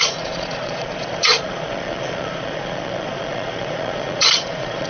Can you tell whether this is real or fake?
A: fake